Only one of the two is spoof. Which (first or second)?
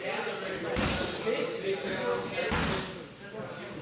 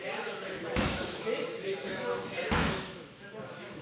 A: second